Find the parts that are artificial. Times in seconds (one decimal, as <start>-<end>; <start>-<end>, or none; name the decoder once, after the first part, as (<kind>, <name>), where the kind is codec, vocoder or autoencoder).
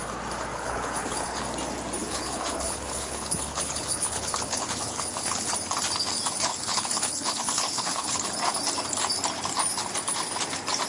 0.5-1.4 (codec, HILCodec); 2.0-5.5; 6.5-8.3